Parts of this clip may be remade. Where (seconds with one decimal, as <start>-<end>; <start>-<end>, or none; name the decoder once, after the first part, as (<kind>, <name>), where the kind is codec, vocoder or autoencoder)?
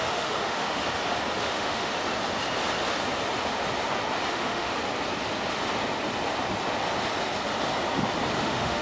0.0-0.8 (autoencoder, DAC-VAE); 1.4-1.9; 4.3-4.7; 8.4-8.8